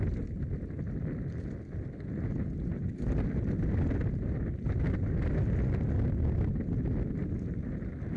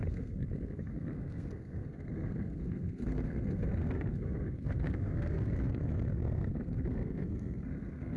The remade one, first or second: second